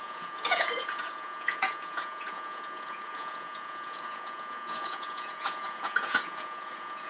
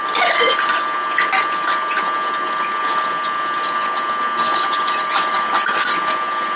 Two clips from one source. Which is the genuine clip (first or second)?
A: second